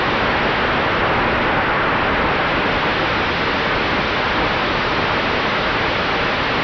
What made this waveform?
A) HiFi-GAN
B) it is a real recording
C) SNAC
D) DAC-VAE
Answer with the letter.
B